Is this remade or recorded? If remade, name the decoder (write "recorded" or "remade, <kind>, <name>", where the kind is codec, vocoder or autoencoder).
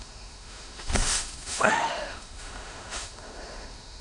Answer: remade, autoencoder, DAC-VAE